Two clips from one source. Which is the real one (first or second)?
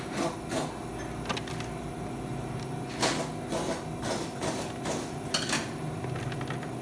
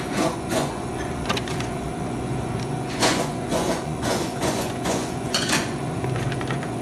first